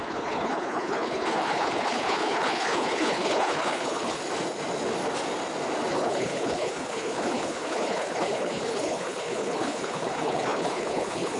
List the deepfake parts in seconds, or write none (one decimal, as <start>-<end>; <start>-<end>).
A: 0.0-4.2; 5.9-11.4